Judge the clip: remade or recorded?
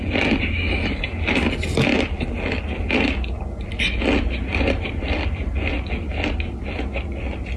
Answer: recorded